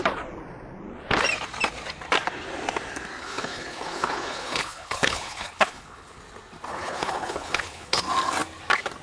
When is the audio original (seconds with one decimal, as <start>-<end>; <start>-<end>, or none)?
0.0-3.2; 6.2-6.7; 8.0-9.0